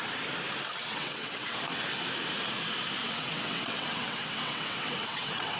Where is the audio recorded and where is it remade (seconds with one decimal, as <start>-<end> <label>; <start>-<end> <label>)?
0.0-0.8 recorded; 0.8-1.6 remade; 1.6-3.0 recorded; 3.0-5.6 remade